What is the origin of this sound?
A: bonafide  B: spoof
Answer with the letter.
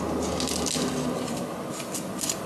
A